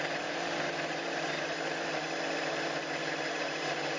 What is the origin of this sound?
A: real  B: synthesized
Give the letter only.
A